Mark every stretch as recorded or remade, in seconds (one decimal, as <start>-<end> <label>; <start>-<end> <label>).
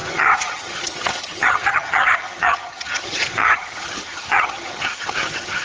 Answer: 0.0-5.6 remade